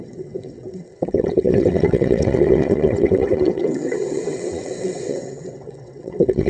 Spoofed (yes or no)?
yes